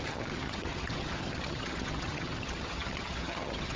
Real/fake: fake